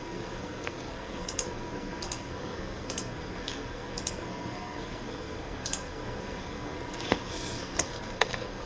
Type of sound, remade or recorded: remade